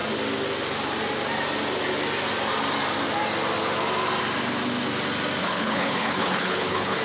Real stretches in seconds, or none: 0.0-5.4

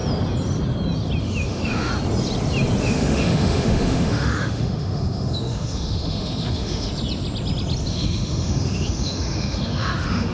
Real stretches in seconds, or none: 0.0-1.2; 1.9-2.8; 6.9-7.9

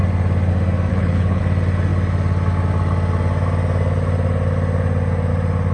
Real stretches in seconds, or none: 0.0-0.9; 1.4-5.7

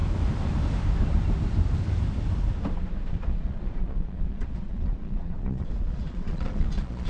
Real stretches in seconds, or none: 0.0-3.1

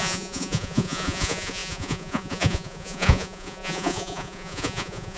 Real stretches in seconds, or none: none